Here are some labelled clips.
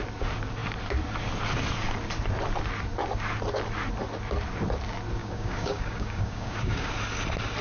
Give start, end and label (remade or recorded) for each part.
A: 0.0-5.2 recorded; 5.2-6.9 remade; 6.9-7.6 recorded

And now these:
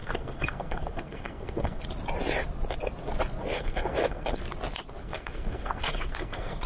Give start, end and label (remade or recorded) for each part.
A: 0.0-1.8 remade; 1.8-3.4 recorded; 3.4-4.4 remade; 4.4-5.0 recorded; 5.0-6.7 remade

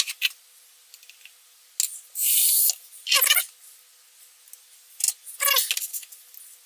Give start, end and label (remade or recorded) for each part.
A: 0.0-6.7 recorded

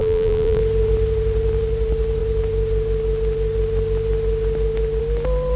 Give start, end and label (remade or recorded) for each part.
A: 0.0-0.6 remade; 0.6-5.6 recorded

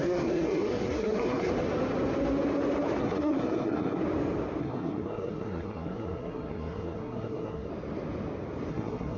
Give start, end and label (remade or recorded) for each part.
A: 0.0-1.5 remade; 1.5-3.0 recorded; 3.0-4.0 remade; 4.0-4.6 recorded; 4.6-7.7 remade; 7.7-8.7 recorded; 8.7-9.2 remade

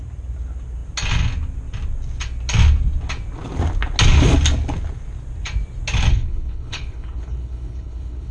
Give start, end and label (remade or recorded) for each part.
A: 0.0-6.1 recorded; 6.1-8.3 remade